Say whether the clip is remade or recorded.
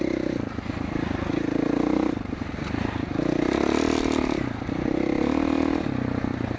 recorded